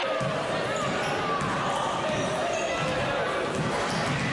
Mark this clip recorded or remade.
recorded